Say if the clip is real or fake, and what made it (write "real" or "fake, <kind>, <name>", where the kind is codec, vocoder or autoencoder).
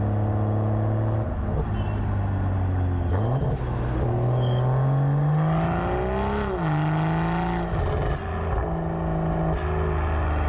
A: real